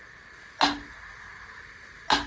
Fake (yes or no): no